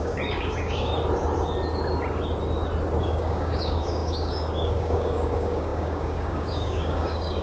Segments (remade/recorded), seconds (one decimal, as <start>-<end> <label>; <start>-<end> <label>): 0.0-0.9 remade; 0.9-3.0 recorded; 3.0-7.4 remade